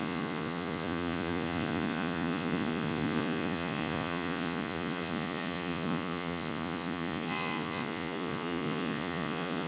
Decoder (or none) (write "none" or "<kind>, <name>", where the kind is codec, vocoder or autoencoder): vocoder, Vocos